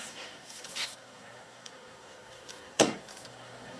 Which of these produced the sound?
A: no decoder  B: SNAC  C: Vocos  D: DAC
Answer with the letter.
B